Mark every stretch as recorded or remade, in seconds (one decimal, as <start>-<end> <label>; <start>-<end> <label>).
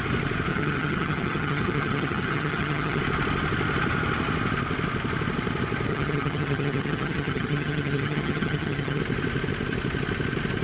0.0-0.5 recorded; 0.5-3.0 remade; 3.0-5.9 recorded; 5.9-9.0 remade; 9.0-10.6 recorded